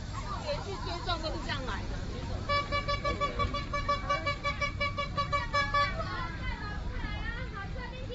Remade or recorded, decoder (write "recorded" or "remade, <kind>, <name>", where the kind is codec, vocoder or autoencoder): recorded